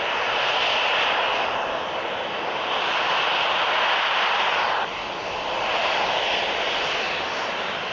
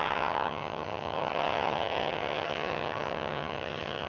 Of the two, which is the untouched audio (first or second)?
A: first